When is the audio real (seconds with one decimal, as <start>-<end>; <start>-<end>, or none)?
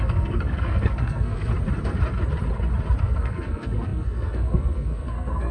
1.5-3.0